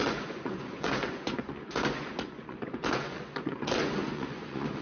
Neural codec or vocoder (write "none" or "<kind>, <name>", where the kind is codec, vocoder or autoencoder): vocoder, Vocos